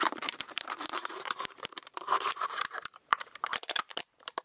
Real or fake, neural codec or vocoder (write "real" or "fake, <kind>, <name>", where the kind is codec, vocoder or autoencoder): fake, vocoder, BigVGAN v2